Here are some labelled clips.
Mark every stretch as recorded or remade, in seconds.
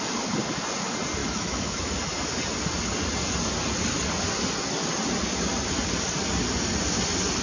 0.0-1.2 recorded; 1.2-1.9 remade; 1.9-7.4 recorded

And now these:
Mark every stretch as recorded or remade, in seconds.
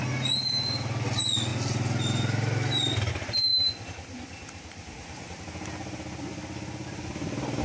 0.0-7.6 recorded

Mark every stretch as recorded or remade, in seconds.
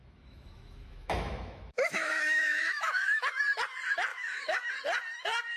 0.0-3.4 remade; 3.4-4.1 recorded; 4.1-4.7 remade; 4.7-5.6 recorded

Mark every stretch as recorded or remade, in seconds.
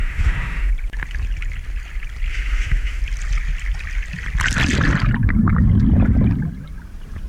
0.0-0.7 remade; 0.7-2.3 recorded; 2.3-3.0 remade; 3.0-7.3 recorded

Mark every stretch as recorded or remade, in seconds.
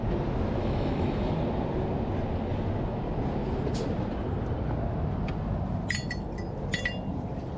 0.0-0.6 recorded; 0.6-1.3 remade; 1.3-7.6 recorded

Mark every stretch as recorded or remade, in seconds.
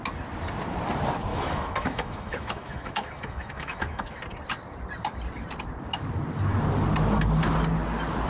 0.0-1.3 recorded; 1.3-4.2 remade; 4.2-8.3 recorded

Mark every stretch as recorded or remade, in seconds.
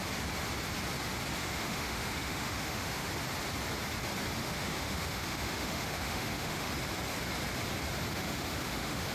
0.0-1.4 recorded; 1.4-3.1 remade; 3.1-4.4 recorded; 4.4-6.7 remade; 6.7-8.1 recorded; 8.1-9.1 remade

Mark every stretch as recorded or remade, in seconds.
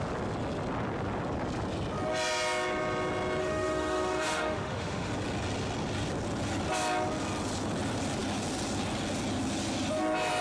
0.0-3.4 recorded; 3.4-5.1 remade; 5.1-10.4 recorded